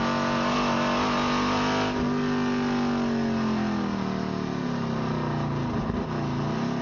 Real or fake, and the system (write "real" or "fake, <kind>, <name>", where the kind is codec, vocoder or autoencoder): real